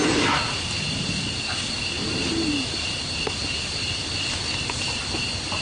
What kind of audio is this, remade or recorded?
recorded